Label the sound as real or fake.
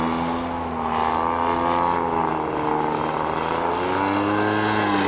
real